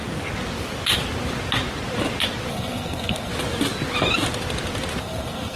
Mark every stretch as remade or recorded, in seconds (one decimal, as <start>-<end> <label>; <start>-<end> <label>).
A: 0.0-2.5 recorded; 2.5-3.3 remade; 3.3-5.0 recorded; 5.0-5.6 remade